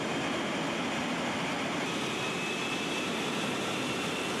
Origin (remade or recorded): recorded